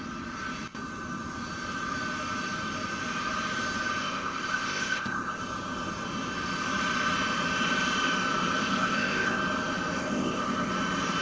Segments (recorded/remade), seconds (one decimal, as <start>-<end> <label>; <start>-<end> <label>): 0.0-4.0 recorded; 4.0-5.4 remade; 5.4-8.6 recorded; 8.6-9.4 remade; 9.4-10.0 recorded; 10.0-10.7 remade; 10.7-11.2 recorded